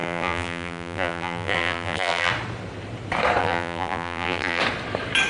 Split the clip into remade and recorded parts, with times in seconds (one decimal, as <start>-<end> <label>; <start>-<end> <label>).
0.0-2.3 remade; 2.3-3.4 recorded; 3.4-4.6 remade; 4.6-5.3 recorded